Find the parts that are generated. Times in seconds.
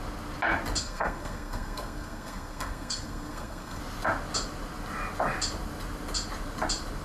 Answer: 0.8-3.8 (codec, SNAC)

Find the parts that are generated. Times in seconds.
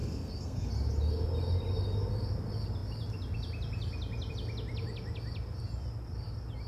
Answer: 0.0-0.7 (codec, SNAC)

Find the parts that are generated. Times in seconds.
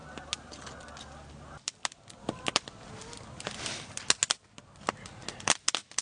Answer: none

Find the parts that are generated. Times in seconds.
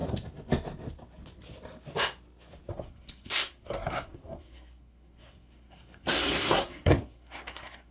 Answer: 2.7-7.9 (codec, SNAC)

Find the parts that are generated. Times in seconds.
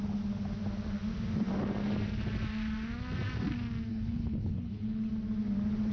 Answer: 3.9-5.1 (codec, HILCodec)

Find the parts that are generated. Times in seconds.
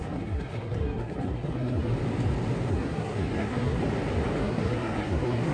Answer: 0.0-1.9 (codec, SNAC); 2.7-3.8; 4.4-5.5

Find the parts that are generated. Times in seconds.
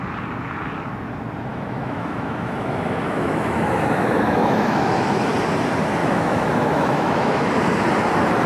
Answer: 1.5-5.3 (autoencoder, DAC-VAE); 6.0-7.5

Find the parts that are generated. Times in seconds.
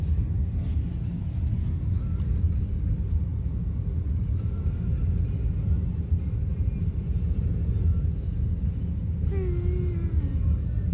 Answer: none